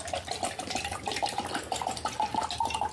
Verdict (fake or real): real